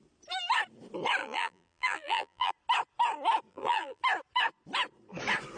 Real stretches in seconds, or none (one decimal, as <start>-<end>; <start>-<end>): 0.0-1.2; 2.5-3.5; 4.0-5.6